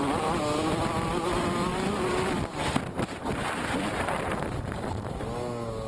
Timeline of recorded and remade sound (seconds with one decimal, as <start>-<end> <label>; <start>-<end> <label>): 0.0-1.7 recorded; 1.7-2.2 remade; 2.2-2.6 recorded; 2.6-4.8 remade; 4.8-5.9 recorded